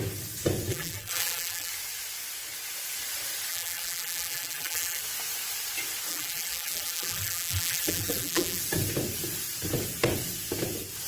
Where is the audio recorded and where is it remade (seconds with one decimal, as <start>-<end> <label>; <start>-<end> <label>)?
0.0-0.7 recorded; 0.7-1.7 remade; 1.7-3.5 recorded; 3.5-5.0 remade; 5.0-6.1 recorded; 6.1-8.6 remade; 8.6-11.1 recorded